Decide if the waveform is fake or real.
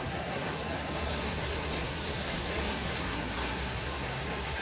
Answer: fake